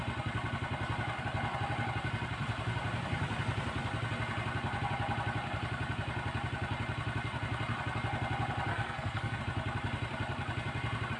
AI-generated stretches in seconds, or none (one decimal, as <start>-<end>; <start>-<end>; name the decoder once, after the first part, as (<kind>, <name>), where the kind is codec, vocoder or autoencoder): 8.7-9.4 (codec, SNAC)